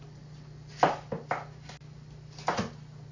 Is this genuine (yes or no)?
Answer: yes